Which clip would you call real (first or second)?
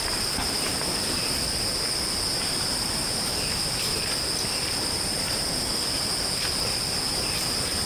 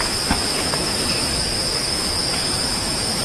first